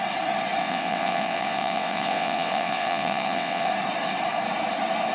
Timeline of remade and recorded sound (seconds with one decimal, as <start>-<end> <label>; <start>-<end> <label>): 0.0-0.6 recorded; 0.6-3.7 remade; 3.7-5.1 recorded